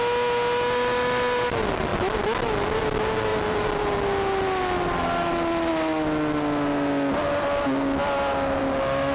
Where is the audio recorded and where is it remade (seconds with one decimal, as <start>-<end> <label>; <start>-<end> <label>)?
0.0-9.1 recorded